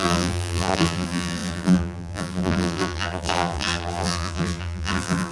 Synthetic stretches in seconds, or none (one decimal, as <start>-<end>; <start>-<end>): 0.0-5.3